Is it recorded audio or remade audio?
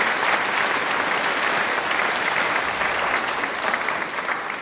recorded